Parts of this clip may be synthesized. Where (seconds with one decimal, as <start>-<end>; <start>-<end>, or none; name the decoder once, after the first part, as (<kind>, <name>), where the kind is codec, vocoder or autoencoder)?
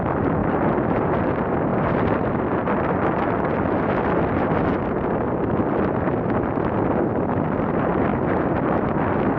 0.4-1.1 (vocoder, BigVGAN v2); 1.7-2.4; 8.1-8.9